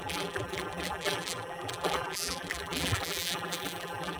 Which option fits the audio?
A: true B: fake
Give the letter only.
B